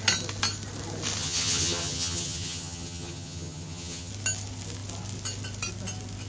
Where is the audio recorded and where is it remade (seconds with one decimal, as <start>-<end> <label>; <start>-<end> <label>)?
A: 0.0-1.2 recorded; 1.2-4.1 remade; 4.1-6.3 recorded